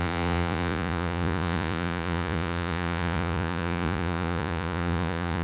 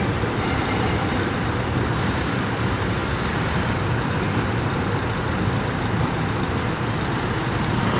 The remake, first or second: first